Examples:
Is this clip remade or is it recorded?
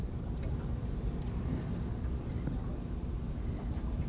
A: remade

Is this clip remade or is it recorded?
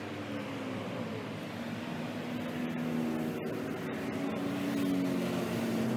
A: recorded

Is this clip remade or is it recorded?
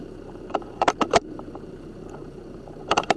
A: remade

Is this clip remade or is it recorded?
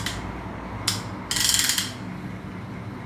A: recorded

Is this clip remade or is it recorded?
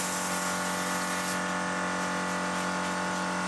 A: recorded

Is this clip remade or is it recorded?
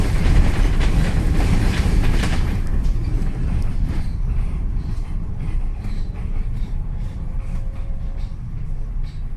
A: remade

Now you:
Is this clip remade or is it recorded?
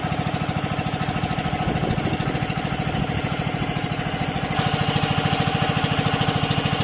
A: recorded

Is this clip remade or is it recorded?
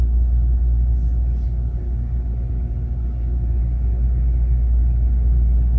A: recorded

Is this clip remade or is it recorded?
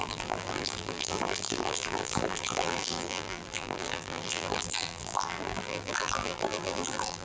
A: remade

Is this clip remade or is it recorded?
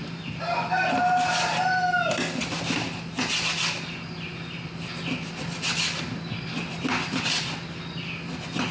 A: recorded